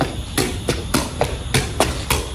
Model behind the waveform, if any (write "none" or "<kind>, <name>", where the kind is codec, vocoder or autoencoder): none